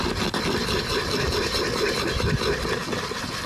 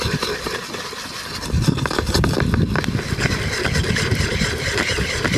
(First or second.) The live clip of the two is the first